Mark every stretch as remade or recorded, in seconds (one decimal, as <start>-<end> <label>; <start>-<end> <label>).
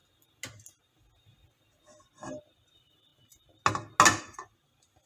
0.0-2.4 recorded; 2.4-3.1 remade; 3.1-4.2 recorded; 4.2-5.1 remade